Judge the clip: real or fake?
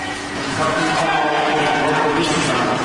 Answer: fake